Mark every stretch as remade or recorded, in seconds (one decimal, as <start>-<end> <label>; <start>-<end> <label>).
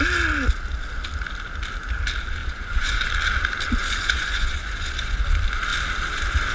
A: 0.0-2.4 recorded; 2.4-3.1 remade; 3.1-3.8 recorded; 3.8-5.2 remade; 5.2-6.5 recorded